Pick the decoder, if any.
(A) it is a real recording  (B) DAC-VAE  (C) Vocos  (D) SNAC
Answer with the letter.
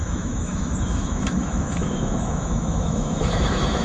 B